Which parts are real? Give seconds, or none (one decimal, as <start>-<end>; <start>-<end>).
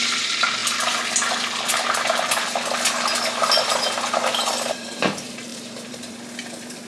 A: 0.6-4.7